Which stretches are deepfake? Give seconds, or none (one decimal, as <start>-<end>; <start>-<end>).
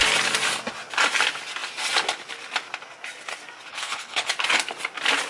3.7-4.3